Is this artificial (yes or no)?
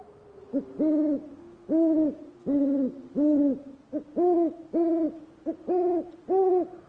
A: no